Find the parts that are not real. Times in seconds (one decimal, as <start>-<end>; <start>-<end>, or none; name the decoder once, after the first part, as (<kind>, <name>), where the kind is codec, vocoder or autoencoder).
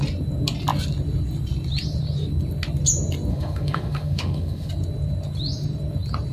3.3-4.7 (autoencoder, DAC-VAE)